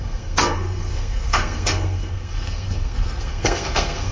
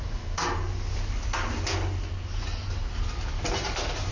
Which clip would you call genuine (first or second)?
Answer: second